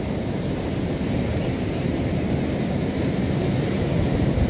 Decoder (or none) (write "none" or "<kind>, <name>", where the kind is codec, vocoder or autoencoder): vocoder, BigVGAN v2